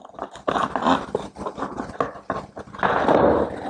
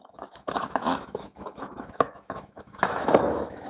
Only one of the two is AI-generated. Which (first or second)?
second